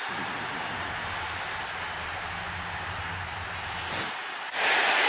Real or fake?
real